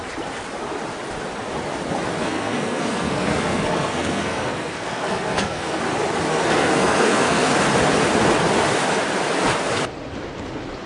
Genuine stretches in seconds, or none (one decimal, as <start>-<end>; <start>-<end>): 0.0-2.2; 5.8-6.3; 7.5-10.9